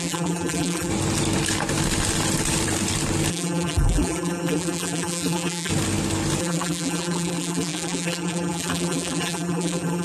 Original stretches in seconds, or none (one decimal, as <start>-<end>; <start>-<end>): 0.9-3.3; 5.7-6.4